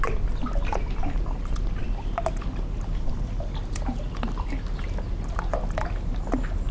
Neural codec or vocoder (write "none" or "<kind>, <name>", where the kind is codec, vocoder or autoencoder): none